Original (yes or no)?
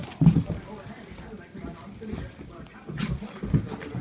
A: yes